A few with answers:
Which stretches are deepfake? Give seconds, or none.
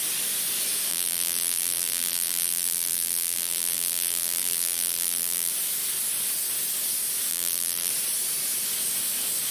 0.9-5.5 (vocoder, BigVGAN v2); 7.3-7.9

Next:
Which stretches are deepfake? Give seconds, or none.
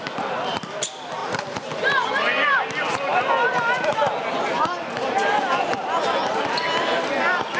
none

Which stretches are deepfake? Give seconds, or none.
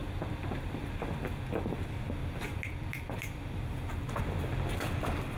0.0-0.8 (vocoder, BigVGAN v2); 2.2-4.2